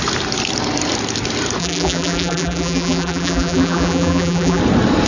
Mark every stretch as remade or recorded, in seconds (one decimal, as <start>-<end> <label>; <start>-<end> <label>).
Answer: 0.0-1.6 recorded; 1.6-4.6 remade; 4.6-5.1 recorded